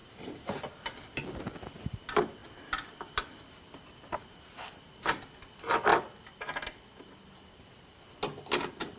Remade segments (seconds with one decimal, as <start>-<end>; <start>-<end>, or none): 0.0-0.6; 4.2-4.9